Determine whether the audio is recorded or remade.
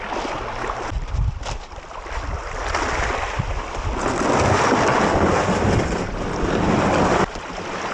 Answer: recorded